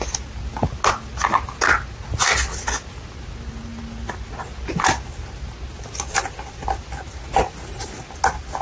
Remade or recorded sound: recorded